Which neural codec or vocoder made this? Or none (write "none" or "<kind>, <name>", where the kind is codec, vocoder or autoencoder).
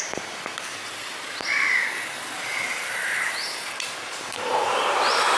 vocoder, BigVGAN v2